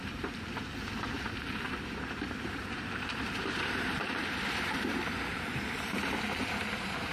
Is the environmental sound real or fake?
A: fake